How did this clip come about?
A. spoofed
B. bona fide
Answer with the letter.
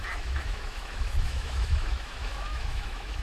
A